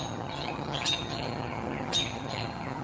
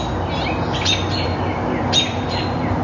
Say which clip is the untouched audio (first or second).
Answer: second